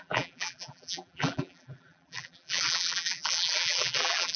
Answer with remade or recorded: remade